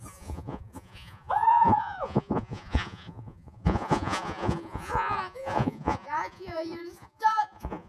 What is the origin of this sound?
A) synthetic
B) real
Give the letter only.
A